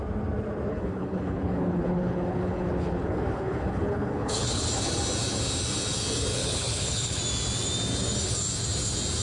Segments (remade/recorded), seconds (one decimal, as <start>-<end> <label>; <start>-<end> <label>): 0.0-0.7 recorded; 0.7-4.7 remade; 4.7-6.4 recorded; 6.4-7.2 remade; 7.2-9.2 recorded